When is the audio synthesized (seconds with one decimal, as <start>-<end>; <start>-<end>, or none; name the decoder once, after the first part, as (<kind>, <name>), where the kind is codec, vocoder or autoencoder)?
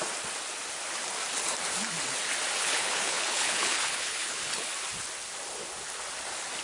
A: 2.6-4.7 (codec, HILCodec)